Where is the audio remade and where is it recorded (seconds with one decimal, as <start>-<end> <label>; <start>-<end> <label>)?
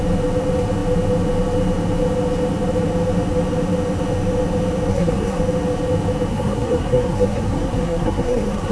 0.0-4.9 recorded; 4.9-5.4 remade; 5.4-6.3 recorded; 6.3-8.7 remade